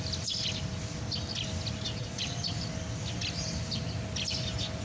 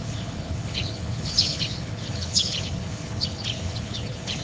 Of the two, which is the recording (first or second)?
first